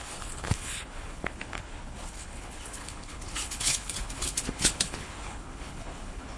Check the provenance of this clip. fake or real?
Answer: fake